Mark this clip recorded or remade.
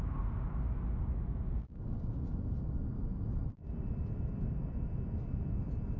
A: recorded